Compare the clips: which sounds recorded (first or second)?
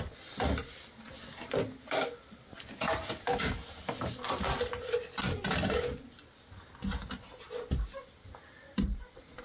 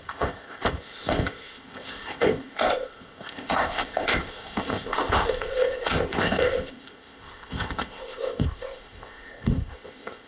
first